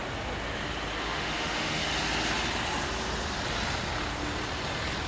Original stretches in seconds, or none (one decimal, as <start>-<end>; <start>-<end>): 0.0-1.0; 1.8-5.1

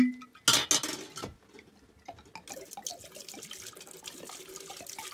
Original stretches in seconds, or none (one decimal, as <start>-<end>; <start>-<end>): 0.0-5.1

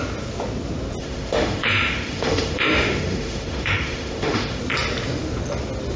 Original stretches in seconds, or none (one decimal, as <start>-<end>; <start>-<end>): 0.0-1.0; 4.6-6.0

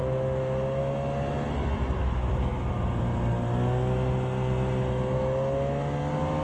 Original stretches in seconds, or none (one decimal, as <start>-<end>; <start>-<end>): 0.8-2.0; 2.7-6.4